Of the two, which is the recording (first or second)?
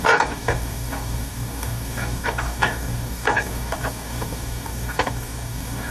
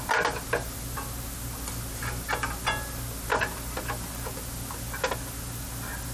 second